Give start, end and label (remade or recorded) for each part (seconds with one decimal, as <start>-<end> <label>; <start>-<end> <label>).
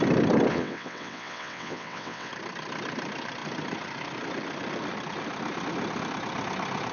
0.0-0.5 recorded; 0.5-2.3 remade; 2.3-6.9 recorded